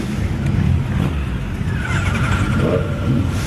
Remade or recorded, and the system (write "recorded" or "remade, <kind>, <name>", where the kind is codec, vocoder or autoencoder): recorded